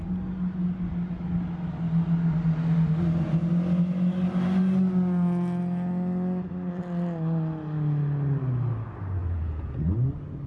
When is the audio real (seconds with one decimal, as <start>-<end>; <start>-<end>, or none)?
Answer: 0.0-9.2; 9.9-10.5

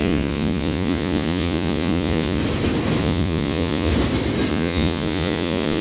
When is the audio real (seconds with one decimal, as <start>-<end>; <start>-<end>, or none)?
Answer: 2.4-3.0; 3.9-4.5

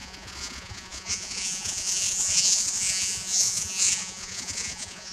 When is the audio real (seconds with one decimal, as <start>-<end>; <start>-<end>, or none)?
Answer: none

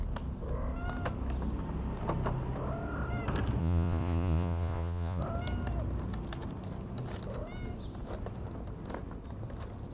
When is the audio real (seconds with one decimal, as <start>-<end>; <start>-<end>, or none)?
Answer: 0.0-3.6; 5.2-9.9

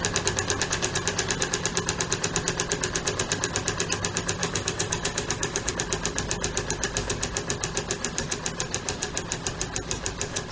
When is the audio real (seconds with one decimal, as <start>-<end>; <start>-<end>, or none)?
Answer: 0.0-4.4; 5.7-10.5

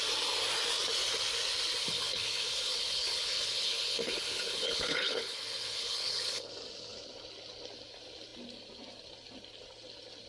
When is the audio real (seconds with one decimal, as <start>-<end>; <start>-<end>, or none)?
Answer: 0.0-1.8; 6.5-10.3

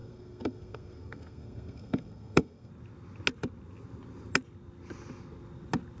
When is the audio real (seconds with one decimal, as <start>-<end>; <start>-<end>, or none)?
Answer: 2.7-6.0